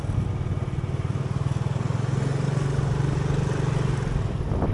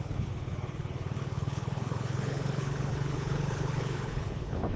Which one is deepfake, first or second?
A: second